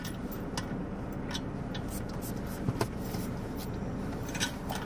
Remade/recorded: recorded